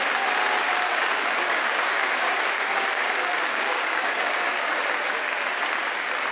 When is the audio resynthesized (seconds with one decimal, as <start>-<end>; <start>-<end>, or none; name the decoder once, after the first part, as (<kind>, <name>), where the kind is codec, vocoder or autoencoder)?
0.9-4.7 (codec, DAC)